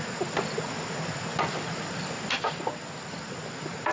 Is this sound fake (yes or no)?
no